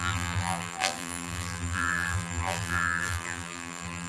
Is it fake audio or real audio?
fake